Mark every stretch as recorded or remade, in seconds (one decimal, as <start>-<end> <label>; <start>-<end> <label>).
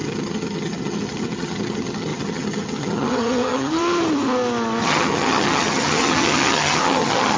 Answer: 0.0-3.8 remade; 3.8-4.8 recorded; 4.8-7.4 remade